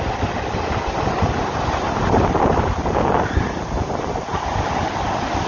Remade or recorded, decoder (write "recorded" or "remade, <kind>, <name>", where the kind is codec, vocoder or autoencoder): recorded